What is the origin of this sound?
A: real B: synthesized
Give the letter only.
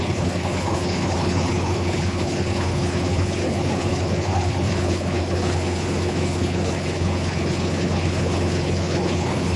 B